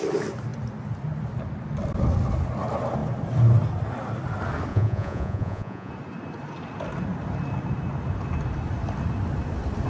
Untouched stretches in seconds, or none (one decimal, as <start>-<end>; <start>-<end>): 0.0-4.7; 5.9-9.9